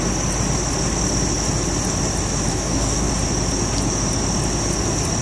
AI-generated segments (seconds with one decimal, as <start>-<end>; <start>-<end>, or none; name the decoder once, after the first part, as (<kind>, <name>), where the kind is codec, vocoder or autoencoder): 2.5-3.1 (codec, DAC)